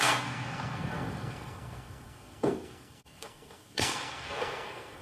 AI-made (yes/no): yes